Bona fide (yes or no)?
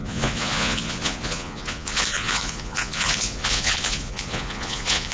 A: no